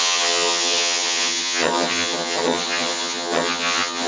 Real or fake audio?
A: fake